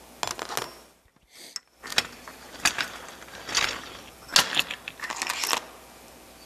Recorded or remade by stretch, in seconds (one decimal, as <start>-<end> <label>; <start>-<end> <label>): 0.0-6.5 recorded